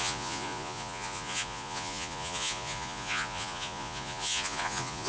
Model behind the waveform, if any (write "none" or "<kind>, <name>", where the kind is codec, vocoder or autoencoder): vocoder, Vocos